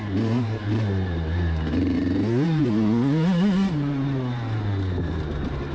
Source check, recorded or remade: remade